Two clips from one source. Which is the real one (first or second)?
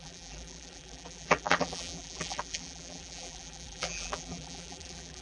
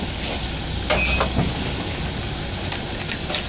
second